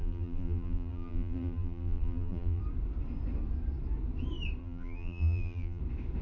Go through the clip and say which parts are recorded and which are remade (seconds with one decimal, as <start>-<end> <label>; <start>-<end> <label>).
0.0-2.6 remade; 2.6-4.6 recorded; 4.6-5.8 remade; 5.8-6.2 recorded